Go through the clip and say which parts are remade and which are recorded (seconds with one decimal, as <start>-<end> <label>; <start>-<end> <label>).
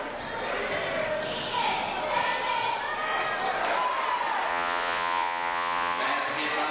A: 0.0-4.5 recorded; 4.5-6.0 remade; 6.0-6.7 recorded